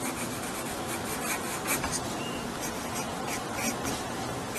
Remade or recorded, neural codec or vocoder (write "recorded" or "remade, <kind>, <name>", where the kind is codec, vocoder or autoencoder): recorded